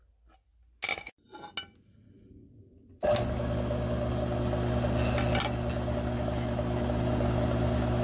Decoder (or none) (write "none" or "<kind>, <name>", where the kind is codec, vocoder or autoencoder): none